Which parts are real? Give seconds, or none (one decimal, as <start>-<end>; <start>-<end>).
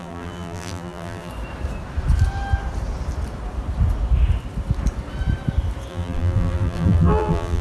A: 1.3-5.9